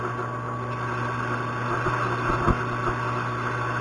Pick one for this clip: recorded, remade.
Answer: recorded